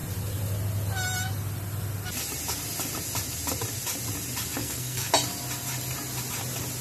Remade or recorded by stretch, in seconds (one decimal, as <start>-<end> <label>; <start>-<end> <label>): 0.0-4.6 recorded; 4.6-5.1 remade; 5.1-6.8 recorded